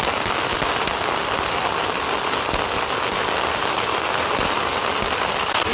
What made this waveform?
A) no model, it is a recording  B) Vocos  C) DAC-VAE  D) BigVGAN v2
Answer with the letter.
A